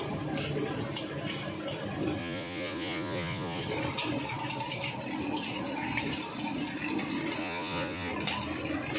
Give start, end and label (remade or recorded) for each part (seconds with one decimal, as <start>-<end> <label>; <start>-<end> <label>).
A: 0.0-2.2 recorded; 2.2-3.6 remade; 3.6-7.4 recorded; 7.4-8.1 remade; 8.1-9.0 recorded